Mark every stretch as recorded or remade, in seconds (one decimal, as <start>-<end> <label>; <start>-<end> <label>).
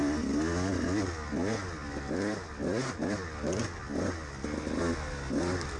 0.0-5.8 recorded